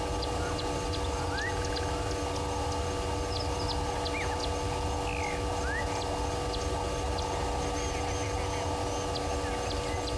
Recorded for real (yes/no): yes